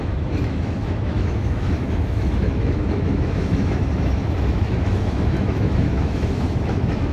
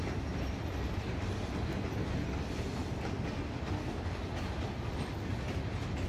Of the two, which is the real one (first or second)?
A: second